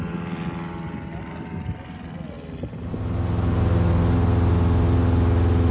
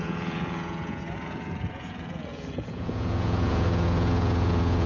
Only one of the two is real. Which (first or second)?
first